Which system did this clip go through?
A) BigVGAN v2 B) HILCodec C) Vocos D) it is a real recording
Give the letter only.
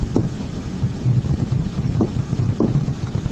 D